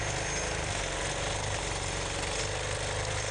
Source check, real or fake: real